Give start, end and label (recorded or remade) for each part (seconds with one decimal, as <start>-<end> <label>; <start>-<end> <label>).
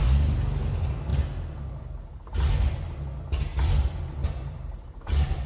0.0-4.2 recorded; 4.2-5.5 remade